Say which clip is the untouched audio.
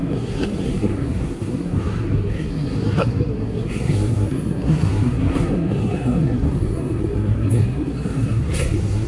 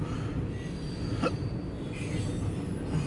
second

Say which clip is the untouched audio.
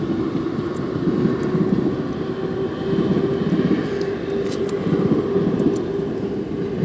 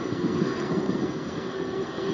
first